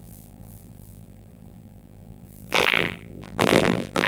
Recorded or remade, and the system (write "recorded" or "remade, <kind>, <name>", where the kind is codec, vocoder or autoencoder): remade, vocoder, BigVGAN v2